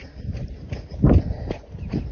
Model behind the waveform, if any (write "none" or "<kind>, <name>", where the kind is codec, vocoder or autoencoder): none